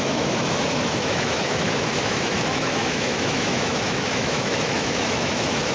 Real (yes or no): no